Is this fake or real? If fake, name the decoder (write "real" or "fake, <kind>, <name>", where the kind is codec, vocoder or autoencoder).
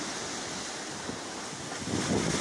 real